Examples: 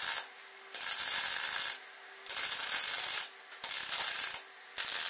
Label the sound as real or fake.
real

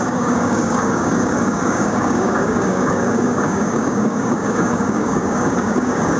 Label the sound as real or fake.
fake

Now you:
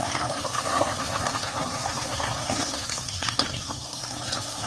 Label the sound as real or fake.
fake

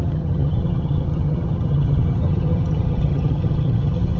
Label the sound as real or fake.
fake